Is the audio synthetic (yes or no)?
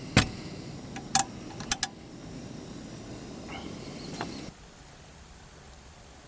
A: no